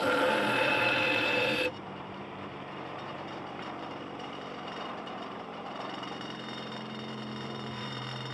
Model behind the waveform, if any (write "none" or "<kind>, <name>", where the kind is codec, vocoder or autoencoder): vocoder, BigVGAN v2